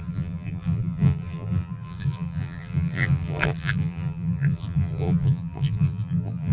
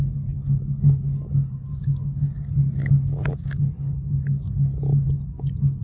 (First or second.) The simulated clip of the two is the first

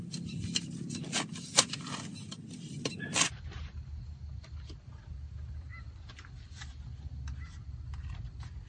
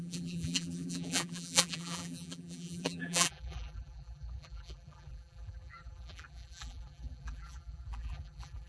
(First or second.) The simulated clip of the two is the second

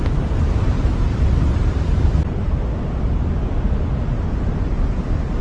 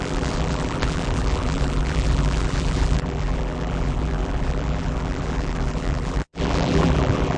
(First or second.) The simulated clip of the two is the second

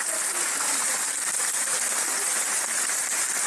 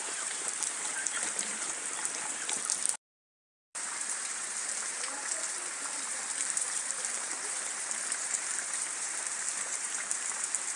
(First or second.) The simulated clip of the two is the second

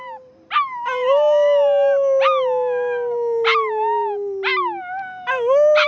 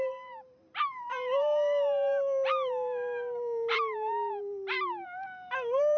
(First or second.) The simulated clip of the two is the second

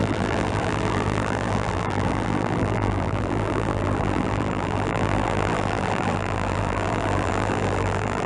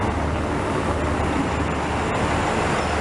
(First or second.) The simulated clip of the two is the first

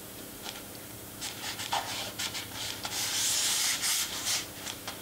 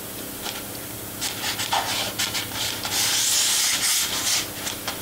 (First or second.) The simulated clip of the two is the first